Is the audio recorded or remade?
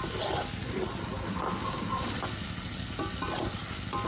recorded